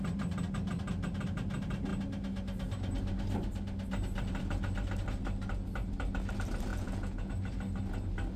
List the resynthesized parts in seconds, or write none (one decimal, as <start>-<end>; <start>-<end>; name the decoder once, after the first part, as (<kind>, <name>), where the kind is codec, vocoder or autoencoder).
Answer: 6.7-7.3 (vocoder, Vocos)